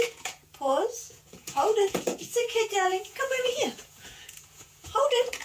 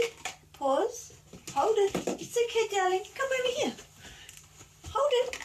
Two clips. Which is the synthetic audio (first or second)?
first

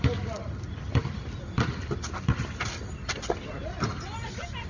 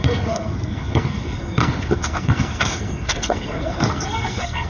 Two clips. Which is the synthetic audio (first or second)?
second